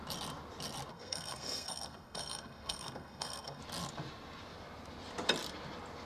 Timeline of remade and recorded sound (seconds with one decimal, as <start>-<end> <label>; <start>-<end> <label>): 0.0-0.9 recorded; 0.9-3.6 remade; 3.6-6.1 recorded